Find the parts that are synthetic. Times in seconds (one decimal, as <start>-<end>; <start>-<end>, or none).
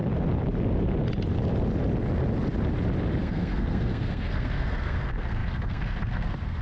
3.2-6.6